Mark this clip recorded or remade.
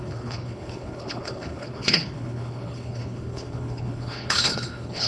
remade